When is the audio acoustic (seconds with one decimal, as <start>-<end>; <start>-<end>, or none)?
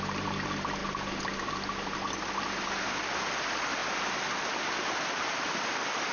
0.0-6.1